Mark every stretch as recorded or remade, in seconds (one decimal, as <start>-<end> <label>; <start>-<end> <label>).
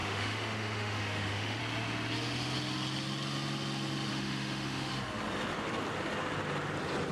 0.0-1.6 remade; 1.6-4.1 recorded; 4.1-4.9 remade; 4.9-7.1 recorded